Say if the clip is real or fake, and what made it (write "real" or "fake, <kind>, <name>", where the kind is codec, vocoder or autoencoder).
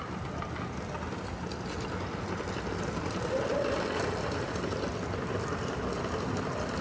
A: real